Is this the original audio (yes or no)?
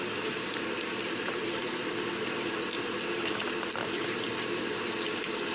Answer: no